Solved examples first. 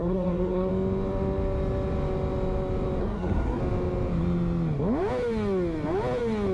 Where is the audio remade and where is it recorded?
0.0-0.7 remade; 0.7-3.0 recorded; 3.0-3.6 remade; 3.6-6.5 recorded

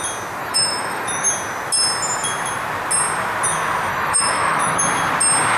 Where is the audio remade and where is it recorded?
0.0-0.4 recorded; 0.4-1.3 remade; 1.3-3.9 recorded; 3.9-4.8 remade; 4.8-5.6 recorded

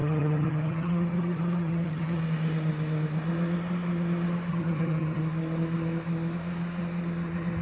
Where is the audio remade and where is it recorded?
0.0-2.2 remade; 2.2-4.5 recorded; 4.5-5.2 remade; 5.2-7.6 recorded

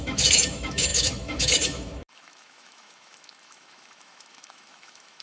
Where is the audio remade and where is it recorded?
0.0-5.2 remade

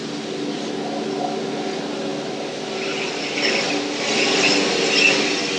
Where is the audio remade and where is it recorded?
0.0-5.6 recorded

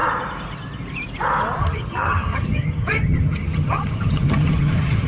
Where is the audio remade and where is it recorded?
0.0-1.6 recorded; 1.6-5.1 remade

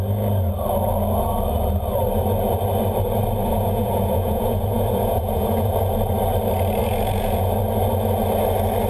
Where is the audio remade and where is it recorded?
0.0-3.4 recorded; 3.4-5.7 remade; 5.7-6.8 recorded; 6.8-7.5 remade; 7.5-8.9 recorded